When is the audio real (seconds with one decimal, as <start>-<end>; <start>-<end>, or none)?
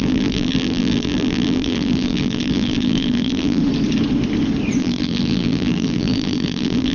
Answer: 3.6-4.8